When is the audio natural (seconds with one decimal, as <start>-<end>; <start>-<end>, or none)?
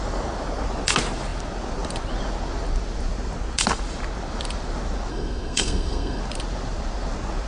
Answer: 0.0-5.1; 6.2-7.5